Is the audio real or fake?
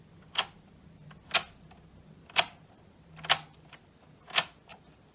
real